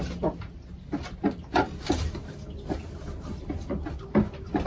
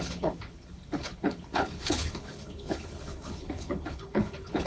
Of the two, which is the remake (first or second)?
second